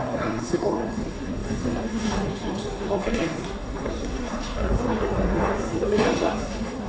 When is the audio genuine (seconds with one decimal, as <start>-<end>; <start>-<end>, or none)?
none